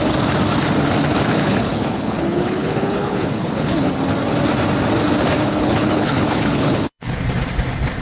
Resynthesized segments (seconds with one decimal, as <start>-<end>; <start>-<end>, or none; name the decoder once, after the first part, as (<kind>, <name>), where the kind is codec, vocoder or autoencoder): 1.4-3.9 (codec, HILCodec); 5.5-7.2